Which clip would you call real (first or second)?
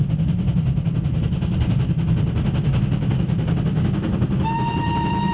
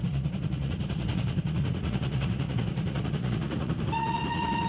first